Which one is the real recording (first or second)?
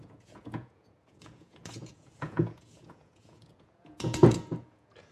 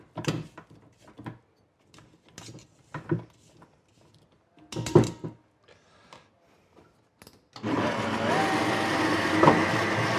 second